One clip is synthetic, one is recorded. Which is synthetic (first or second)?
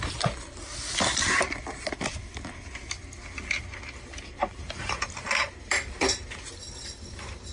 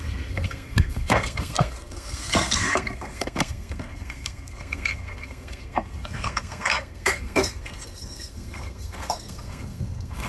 second